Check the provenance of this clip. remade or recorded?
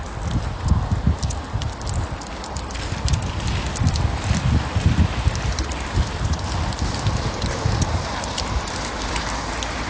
recorded